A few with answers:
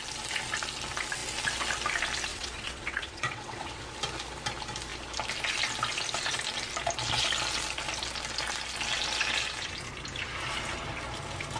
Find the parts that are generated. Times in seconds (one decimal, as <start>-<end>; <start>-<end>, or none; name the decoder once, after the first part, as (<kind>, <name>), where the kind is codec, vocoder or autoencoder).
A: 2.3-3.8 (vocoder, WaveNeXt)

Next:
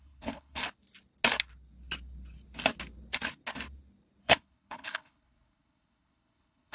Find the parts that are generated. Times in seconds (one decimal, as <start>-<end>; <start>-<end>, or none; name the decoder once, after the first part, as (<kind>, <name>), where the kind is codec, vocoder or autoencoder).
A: 0.0-0.6 (codec, HILCodec); 4.2-6.7

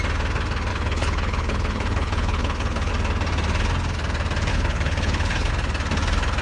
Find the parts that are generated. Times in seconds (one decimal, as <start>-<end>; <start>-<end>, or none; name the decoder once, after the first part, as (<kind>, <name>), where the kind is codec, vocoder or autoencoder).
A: 0.7-2.9 (codec, HILCodec); 4.5-5.5